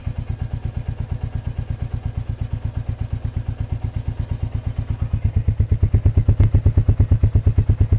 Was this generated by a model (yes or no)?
no